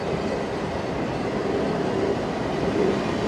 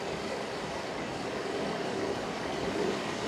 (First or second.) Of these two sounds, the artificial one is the second